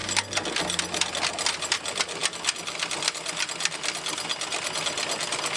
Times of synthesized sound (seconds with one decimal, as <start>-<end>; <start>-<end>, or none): none